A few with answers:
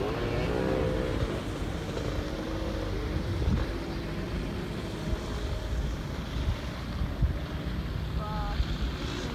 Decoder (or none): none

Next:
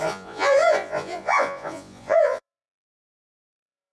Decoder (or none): vocoder, Vocos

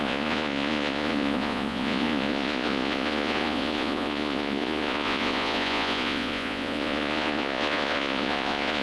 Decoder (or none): vocoder, Vocos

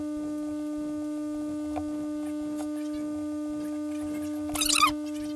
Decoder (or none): none